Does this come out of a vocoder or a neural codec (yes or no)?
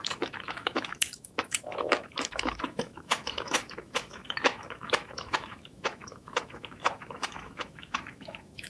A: yes